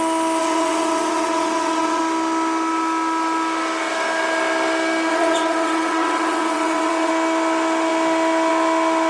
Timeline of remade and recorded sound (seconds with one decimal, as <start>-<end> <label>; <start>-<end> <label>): 0.0-0.4 recorded; 0.4-2.0 remade; 2.0-5.1 recorded; 5.1-7.1 remade; 7.1-9.1 recorded